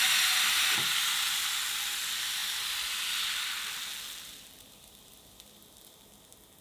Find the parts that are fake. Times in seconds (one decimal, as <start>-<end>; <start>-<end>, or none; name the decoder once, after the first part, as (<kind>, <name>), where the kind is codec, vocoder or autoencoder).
none